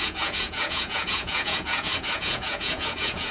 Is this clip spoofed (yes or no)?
yes